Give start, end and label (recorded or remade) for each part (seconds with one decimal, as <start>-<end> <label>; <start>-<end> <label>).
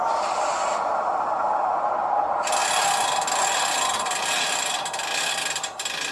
0.0-6.1 recorded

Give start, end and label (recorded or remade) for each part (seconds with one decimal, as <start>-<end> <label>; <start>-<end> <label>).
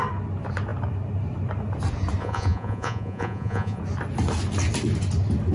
0.0-2.2 recorded; 2.2-3.8 remade; 3.8-5.5 recorded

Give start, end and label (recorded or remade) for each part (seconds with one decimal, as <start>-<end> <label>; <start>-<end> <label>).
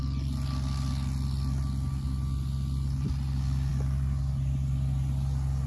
0.0-5.7 recorded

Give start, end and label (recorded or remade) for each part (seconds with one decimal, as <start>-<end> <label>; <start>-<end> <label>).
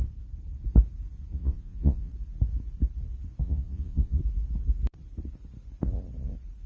0.0-1.3 recorded; 1.3-2.1 remade; 2.1-3.4 recorded; 3.4-4.2 remade; 4.2-6.7 recorded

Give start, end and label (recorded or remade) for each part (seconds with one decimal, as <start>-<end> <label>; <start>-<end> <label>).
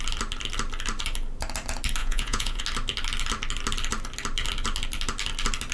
0.0-2.0 recorded; 2.0-2.6 remade; 2.6-5.7 recorded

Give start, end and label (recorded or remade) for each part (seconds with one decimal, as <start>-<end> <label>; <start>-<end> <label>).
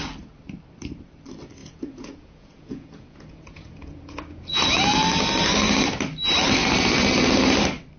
0.0-1.6 recorded; 1.6-4.8 remade; 4.8-8.0 recorded